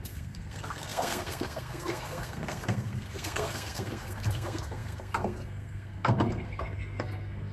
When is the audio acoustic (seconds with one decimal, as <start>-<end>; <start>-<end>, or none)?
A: none